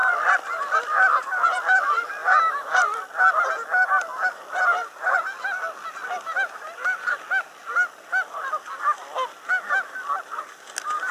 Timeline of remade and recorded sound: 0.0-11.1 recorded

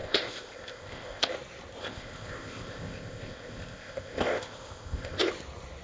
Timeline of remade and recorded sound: 0.0-1.3 remade; 1.3-1.8 recorded; 1.8-5.3 remade; 5.3-5.8 recorded